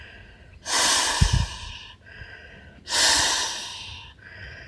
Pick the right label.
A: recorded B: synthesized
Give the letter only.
A